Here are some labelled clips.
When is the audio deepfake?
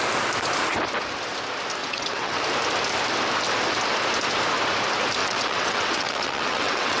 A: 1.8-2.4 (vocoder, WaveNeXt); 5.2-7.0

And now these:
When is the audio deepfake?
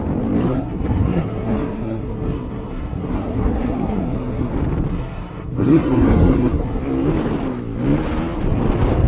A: 0.4-4.5 (codec, SNAC); 4.9-6.8